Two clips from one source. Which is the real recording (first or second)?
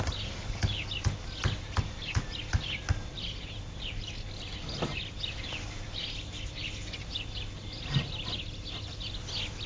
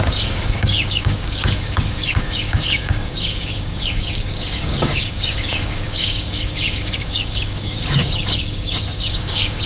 first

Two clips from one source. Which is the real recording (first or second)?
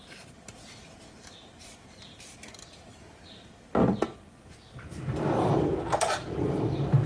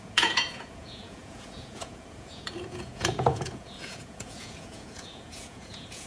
first